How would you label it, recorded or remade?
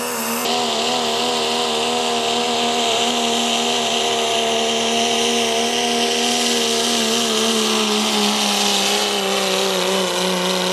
recorded